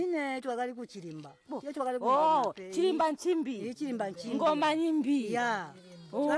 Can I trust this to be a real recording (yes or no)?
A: yes